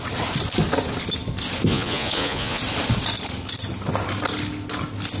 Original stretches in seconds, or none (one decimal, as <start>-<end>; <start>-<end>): 0.0-1.7; 2.6-5.2